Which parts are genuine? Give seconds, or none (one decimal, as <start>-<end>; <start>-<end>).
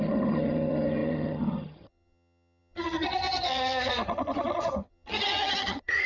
none